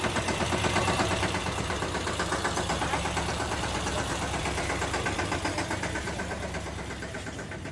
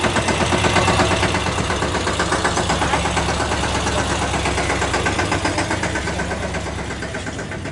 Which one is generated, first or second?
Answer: first